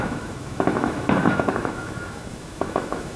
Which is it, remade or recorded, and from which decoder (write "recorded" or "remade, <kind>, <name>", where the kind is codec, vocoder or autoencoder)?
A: remade, autoencoder, DAC-VAE